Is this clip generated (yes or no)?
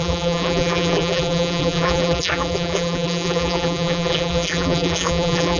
yes